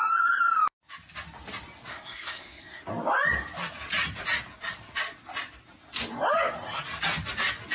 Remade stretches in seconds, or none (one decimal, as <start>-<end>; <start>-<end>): 1.9-2.8

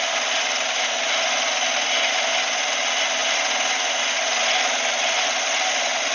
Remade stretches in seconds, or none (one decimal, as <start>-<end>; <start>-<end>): none

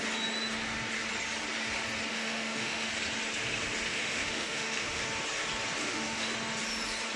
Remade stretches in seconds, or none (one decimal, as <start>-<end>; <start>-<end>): 2.1-2.9; 3.9-5.0; 5.8-6.3

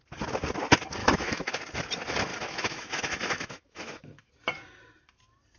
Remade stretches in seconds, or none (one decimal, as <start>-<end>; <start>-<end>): 1.0-1.6; 2.3-4.3

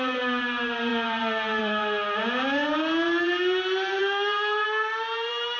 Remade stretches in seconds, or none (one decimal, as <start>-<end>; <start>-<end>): 0.0-5.6

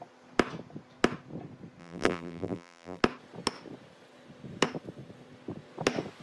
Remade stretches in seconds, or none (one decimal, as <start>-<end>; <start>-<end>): 1.8-3.0